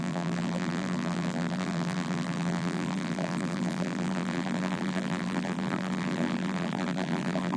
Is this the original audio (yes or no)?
no